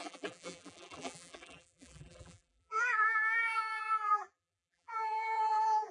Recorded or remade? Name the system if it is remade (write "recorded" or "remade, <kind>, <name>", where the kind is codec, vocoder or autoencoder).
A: remade, vocoder, BigVGAN v2